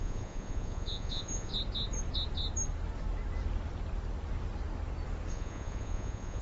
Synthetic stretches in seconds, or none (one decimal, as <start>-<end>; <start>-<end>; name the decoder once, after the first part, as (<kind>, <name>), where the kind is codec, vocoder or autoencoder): 0.0-1.5 (vocoder, Vocos); 5.3-6.4